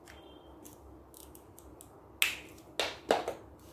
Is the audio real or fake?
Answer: real